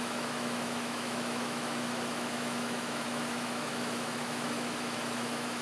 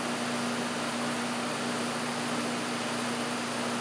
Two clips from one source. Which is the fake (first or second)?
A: first